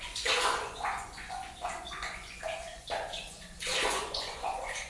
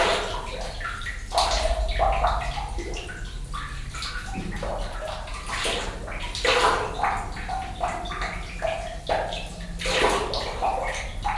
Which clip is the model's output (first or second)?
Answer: first